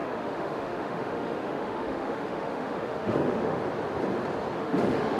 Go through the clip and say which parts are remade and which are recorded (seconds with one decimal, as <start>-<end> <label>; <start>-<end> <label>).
0.0-3.6 remade; 3.6-4.6 recorded; 4.6-5.2 remade